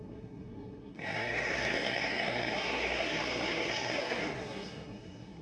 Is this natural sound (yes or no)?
no